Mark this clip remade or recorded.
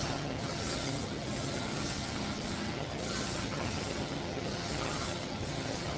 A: remade